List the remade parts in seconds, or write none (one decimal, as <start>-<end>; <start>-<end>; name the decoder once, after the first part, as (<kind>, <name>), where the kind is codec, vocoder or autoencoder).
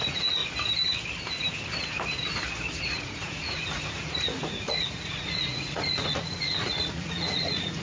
0.0-0.4 (vocoder, Vocos); 2.8-7.8